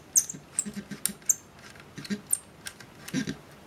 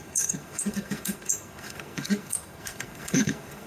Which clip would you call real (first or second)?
first